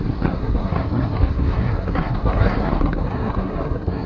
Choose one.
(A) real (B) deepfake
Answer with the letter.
B